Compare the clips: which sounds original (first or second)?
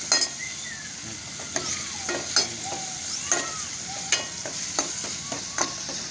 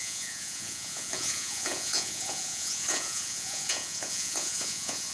first